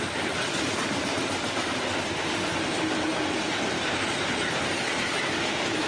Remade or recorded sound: recorded